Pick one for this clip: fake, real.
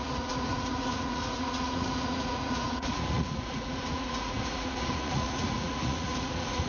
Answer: fake